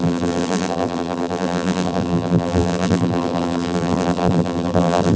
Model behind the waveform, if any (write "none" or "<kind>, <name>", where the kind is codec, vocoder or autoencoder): vocoder, BigVGAN v2